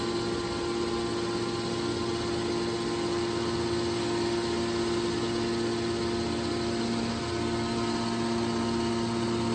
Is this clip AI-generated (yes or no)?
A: no